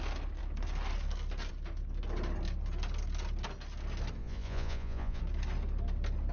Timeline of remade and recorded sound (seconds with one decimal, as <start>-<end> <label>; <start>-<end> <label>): 0.0-4.2 recorded; 4.2-5.2 remade; 5.2-6.3 recorded